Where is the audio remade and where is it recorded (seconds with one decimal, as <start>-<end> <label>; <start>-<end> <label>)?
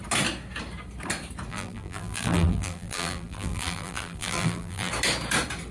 0.0-1.5 recorded; 1.5-4.9 remade; 4.9-5.7 recorded